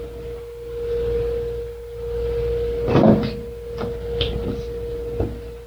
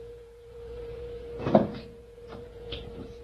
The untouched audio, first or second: first